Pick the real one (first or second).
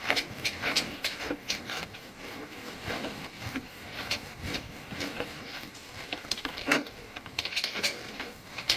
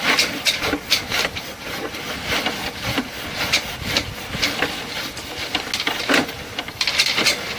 second